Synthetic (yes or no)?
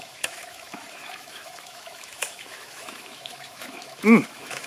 yes